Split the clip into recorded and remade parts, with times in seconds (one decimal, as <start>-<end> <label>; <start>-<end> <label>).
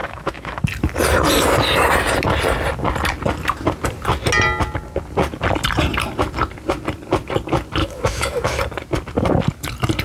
0.0-0.6 remade; 0.6-7.8 recorded; 7.8-8.6 remade; 8.6-10.0 recorded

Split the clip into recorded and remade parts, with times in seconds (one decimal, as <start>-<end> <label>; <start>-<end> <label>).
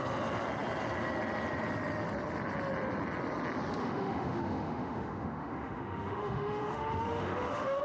0.0-3.8 recorded; 3.8-7.8 remade